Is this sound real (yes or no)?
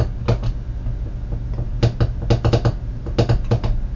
yes